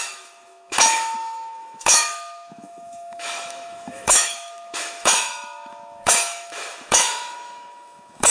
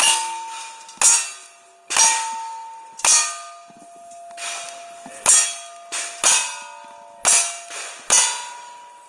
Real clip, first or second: second